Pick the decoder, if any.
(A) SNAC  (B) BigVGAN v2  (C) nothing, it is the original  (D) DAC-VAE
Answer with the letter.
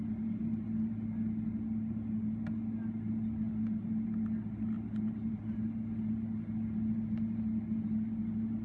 C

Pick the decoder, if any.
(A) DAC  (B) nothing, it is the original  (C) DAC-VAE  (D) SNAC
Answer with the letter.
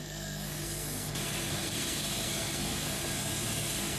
D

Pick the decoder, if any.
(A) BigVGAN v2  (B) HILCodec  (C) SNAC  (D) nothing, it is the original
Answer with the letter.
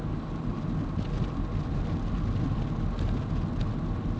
D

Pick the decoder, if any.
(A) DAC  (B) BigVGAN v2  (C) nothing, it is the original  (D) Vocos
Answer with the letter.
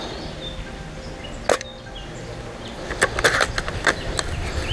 C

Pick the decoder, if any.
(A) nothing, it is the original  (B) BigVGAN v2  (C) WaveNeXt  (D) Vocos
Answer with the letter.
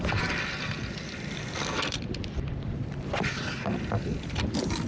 B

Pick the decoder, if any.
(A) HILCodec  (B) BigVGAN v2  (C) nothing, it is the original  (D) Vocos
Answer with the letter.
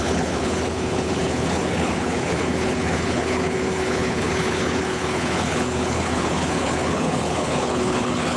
A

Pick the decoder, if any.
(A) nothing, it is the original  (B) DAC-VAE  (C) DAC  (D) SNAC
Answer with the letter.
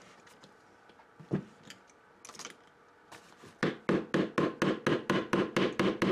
A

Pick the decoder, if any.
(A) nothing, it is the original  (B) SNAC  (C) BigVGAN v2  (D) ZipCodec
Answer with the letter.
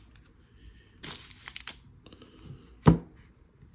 A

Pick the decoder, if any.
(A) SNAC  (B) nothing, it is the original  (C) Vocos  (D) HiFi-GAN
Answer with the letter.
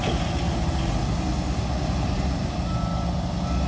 B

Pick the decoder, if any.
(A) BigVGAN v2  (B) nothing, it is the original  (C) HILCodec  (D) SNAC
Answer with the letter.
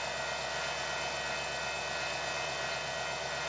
B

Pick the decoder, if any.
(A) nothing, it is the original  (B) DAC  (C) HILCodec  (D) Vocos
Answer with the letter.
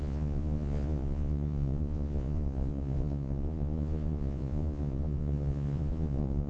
D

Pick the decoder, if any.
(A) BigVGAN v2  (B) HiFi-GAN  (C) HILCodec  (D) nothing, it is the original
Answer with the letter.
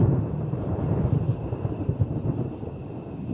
A